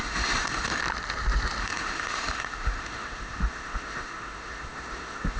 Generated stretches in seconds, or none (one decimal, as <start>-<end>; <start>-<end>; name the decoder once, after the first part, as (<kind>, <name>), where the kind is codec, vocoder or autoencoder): 0.0-0.8 (autoencoder, DAC-VAE); 1.6-5.4